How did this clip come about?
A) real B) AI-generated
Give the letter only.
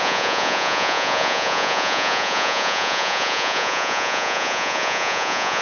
B